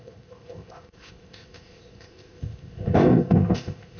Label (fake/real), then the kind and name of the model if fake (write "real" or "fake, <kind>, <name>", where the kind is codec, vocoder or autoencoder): fake, codec, ZipCodec